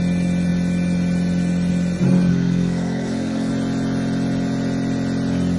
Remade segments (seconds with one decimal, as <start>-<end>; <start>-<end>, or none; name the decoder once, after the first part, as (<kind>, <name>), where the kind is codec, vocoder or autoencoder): 2.3-3.5 (codec, SNAC)